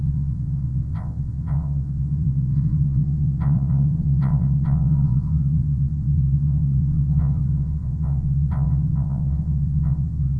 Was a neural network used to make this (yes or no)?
yes